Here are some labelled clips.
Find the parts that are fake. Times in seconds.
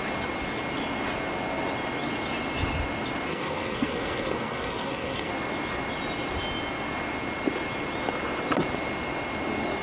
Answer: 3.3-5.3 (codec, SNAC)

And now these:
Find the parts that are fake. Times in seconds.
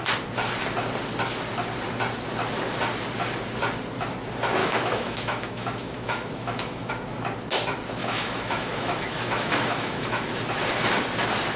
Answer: 4.6-6.9 (autoencoder, DAC-VAE); 8.0-10.3